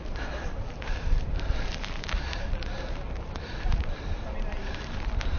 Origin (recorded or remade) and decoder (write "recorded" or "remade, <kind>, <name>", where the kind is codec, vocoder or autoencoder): remade, vocoder, BigVGAN v2